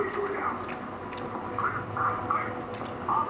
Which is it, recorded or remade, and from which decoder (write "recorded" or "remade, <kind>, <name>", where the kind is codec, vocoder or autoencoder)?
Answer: recorded